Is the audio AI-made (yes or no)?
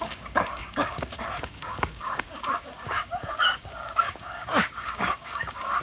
yes